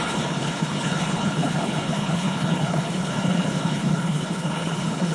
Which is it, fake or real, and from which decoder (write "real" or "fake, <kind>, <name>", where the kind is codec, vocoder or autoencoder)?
fake, codec, HILCodec